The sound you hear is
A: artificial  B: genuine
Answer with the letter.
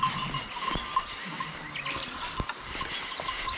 B